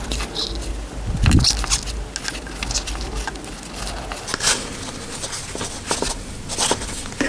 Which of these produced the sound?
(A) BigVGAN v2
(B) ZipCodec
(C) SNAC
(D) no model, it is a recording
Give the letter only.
D